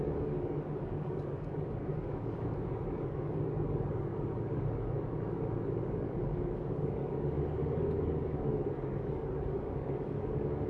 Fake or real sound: fake